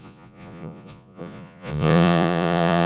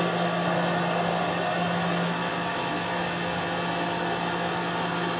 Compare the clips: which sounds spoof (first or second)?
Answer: first